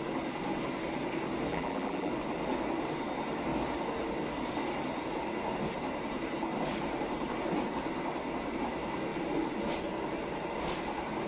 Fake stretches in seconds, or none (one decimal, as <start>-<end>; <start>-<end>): 1.5-2.1